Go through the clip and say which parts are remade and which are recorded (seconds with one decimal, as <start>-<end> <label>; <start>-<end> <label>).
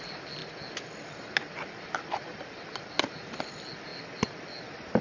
0.0-5.0 recorded